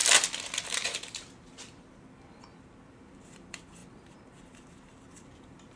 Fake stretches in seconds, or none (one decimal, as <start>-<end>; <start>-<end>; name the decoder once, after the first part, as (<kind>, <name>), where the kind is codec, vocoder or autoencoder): 2.9-3.8 (vocoder, BigVGAN v2); 4.4-5.8